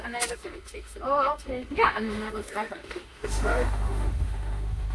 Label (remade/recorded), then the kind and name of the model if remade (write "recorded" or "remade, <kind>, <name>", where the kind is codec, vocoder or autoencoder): remade, autoencoder, DAC-VAE